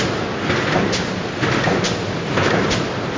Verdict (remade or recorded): recorded